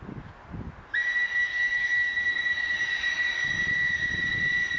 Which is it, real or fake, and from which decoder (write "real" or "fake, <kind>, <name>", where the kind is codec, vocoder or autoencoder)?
real